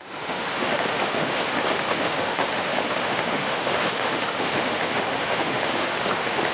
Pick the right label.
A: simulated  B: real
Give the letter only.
A